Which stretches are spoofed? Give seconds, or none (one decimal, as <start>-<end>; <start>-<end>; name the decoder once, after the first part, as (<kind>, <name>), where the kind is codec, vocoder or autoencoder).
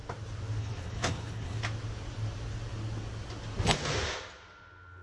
0.6-1.6 (codec, HILCodec)